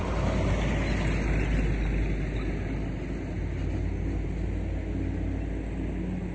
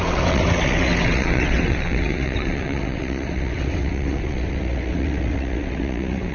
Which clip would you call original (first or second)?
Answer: first